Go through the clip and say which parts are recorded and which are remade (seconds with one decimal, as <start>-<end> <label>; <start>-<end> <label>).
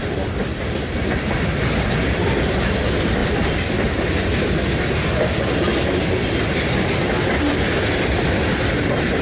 0.0-9.2 recorded